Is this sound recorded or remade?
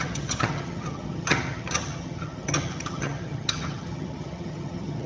remade